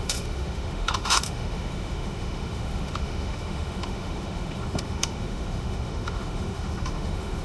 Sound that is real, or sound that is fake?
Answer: fake